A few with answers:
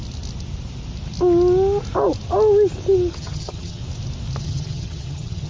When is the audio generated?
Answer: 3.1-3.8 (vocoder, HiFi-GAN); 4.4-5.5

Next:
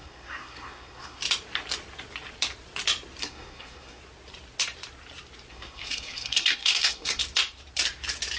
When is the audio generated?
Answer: 0.0-1.2 (codec, SNAC); 3.2-4.0; 5.5-7.2